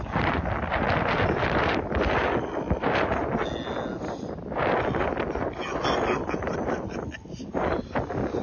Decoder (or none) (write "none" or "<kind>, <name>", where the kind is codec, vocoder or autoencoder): none